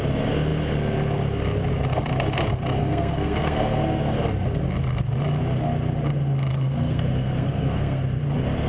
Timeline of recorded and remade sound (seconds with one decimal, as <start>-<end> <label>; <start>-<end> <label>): 0.0-2.8 recorded; 2.8-3.8 remade; 3.8-6.5 recorded; 6.5-8.0 remade; 8.0-8.7 recorded